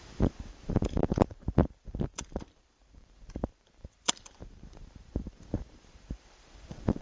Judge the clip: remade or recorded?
remade